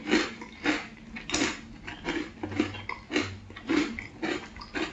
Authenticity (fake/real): real